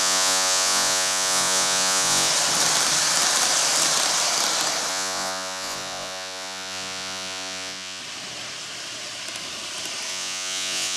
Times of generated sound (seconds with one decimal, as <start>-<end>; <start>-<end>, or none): 0.0-2.3; 4.9-8.0; 10.1-11.0